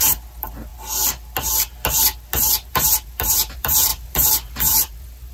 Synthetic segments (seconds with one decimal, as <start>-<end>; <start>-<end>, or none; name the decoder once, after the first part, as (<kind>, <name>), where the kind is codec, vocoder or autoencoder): 0.0-0.7 (vocoder, BigVGAN v2); 2.7-5.3